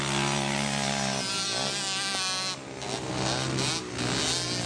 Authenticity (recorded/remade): recorded